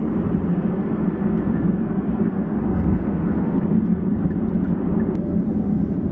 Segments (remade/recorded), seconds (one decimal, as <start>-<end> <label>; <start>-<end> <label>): 0.0-0.5 recorded; 0.5-4.2 remade; 4.2-6.1 recorded